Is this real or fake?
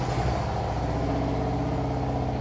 real